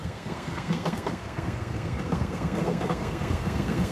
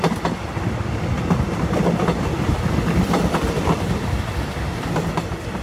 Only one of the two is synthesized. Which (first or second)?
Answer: first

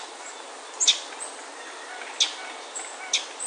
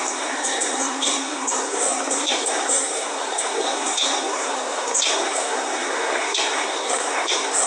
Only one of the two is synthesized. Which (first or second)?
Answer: second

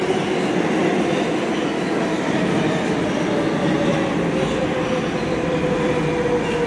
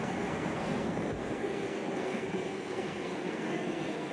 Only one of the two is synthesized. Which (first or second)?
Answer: second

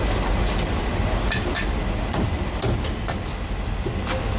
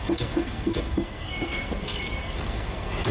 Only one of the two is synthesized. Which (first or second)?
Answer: second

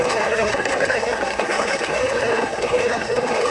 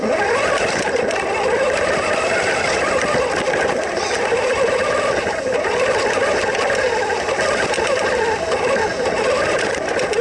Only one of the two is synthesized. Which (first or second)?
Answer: first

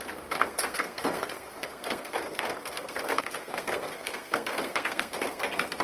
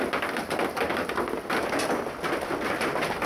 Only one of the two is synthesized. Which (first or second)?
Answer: first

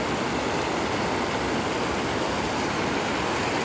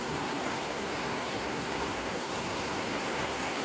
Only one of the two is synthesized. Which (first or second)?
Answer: second